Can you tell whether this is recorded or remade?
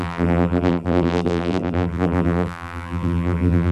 remade